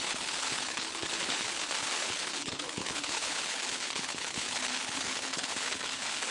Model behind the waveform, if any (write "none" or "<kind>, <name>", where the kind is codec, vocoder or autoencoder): codec, HILCodec